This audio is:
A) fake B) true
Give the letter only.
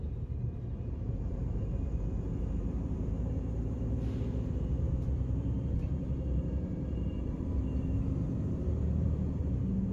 A